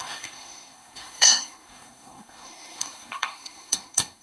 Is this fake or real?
fake